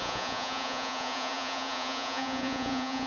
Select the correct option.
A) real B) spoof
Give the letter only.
B